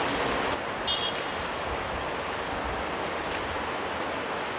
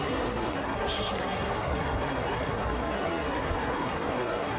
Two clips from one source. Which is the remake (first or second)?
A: second